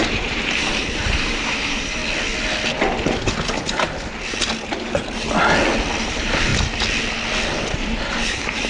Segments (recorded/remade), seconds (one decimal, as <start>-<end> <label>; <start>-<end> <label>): 0.0-2.0 remade; 2.0-6.0 recorded; 6.0-6.5 remade; 6.5-7.5 recorded; 7.5-8.7 remade